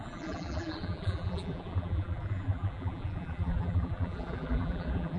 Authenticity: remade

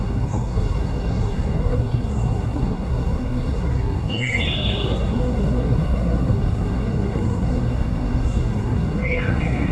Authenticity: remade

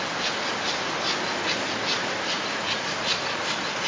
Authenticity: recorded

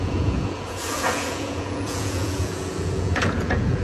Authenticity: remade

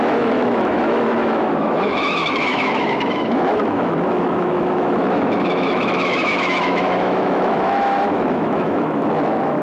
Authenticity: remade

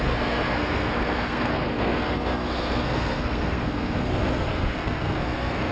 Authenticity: remade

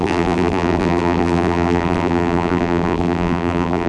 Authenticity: remade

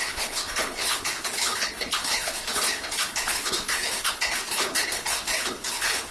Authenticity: remade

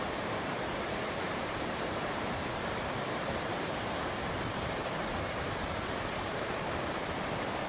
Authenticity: remade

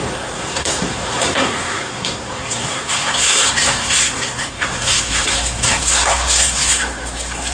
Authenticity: remade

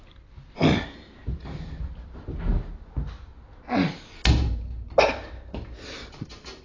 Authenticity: recorded